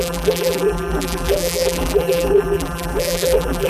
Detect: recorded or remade remade